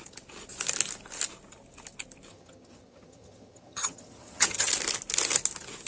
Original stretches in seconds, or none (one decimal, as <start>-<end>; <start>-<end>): 0.0-2.3; 4.7-5.9